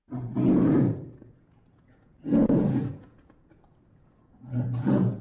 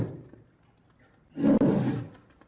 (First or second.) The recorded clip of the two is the second